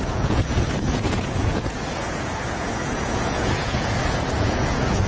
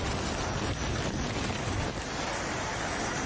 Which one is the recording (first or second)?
second